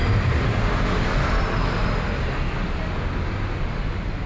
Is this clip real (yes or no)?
yes